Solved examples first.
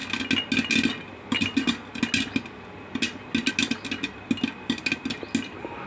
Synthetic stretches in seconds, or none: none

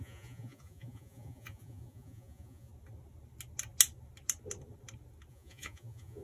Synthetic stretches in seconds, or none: 0.0-2.7 (vocoder, Vocos); 5.3-6.2

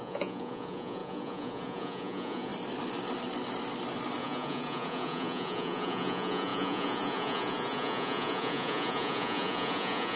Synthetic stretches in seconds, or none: 0.0-2.5 (vocoder, Vocos); 4.2-10.2

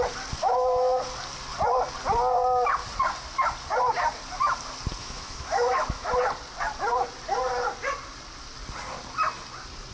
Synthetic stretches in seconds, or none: 0.4-1.0 (autoencoder, DAC-VAE); 5.0-6.1

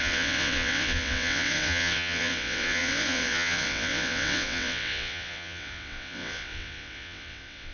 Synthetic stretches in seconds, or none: 0.0-7.7 (vocoder, WaveNeXt)

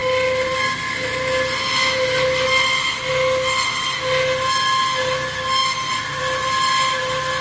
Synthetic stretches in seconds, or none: none